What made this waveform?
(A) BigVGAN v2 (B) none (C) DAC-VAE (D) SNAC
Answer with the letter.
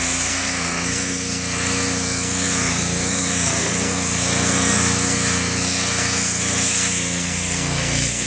D